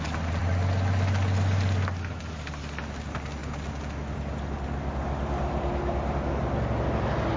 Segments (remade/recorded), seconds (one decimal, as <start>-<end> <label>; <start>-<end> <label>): 0.0-7.4 recorded